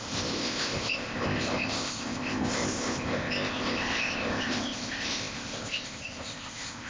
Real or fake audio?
fake